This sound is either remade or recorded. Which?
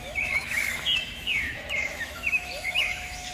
remade